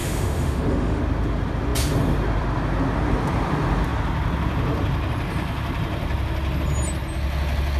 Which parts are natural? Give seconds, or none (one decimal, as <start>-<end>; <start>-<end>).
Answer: 1.0-7.8